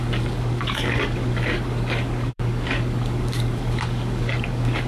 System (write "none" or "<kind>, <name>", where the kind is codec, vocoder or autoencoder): codec, DAC